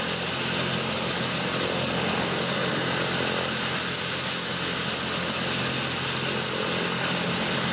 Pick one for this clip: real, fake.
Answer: real